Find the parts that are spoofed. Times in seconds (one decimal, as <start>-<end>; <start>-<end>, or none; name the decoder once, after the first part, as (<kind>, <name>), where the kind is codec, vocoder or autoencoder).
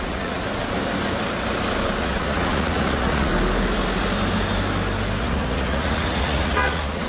0.0-0.4 (vocoder, Vocos); 2.0-3.3; 5.2-7.1